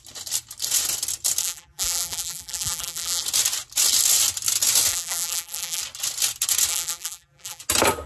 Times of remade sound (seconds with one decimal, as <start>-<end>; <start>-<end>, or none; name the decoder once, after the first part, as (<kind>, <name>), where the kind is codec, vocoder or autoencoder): 1.4-3.2 (vocoder, BigVGAN v2); 4.9-5.8; 6.7-7.6

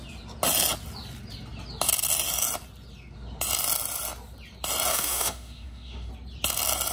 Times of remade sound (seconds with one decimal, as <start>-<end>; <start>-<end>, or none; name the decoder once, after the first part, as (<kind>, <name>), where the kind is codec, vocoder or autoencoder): 4.9-6.1 (autoencoder, DAC-VAE)

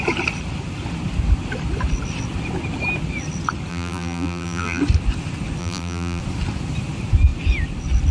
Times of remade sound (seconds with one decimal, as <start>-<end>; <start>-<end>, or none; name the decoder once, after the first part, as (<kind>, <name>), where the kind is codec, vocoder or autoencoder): 3.7-4.8 (vocoder, BigVGAN v2); 5.6-6.2

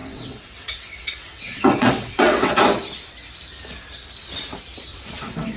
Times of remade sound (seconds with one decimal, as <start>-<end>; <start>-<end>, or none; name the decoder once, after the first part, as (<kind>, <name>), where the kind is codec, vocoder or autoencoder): 0.0-2.5 (vocoder, WaveNeXt); 4.9-5.6

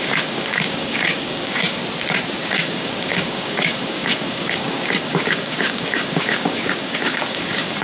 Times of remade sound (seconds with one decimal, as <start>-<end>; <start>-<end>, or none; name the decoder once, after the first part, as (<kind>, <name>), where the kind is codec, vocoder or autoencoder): 0.0-1.8 (codec, DAC); 2.4-7.8

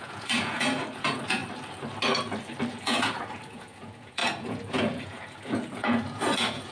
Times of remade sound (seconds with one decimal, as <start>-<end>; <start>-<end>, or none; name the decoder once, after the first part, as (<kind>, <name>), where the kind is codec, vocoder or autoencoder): 0.0-1.4 (vocoder, Vocos); 2.7-6.7

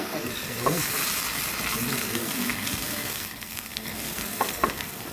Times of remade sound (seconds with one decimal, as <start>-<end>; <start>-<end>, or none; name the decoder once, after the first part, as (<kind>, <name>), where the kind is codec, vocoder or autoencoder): 0.0-1.0 (codec, SNAC); 1.9-5.1

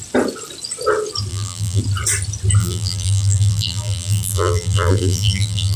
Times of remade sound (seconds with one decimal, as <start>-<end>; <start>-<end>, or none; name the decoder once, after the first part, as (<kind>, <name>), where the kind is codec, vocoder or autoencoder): 1.3-1.8 (vocoder, BigVGAN v2); 2.6-5.8